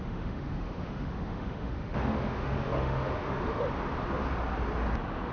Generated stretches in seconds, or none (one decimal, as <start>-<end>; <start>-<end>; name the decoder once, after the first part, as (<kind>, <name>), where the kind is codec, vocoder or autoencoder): 0.0-3.6 (autoencoder, DAC-VAE)